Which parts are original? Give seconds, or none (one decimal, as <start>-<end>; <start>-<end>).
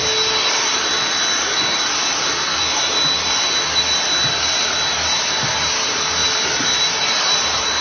0.0-7.8